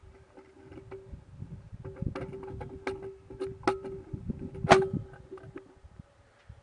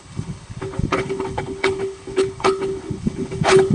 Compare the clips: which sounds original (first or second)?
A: first